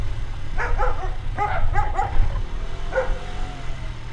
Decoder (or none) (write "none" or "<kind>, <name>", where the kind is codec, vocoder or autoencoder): none